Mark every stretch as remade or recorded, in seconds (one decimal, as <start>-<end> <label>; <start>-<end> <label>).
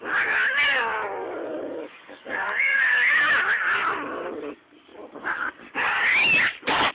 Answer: 0.0-1.2 recorded; 1.2-3.3 remade; 3.3-6.1 recorded; 6.1-6.9 remade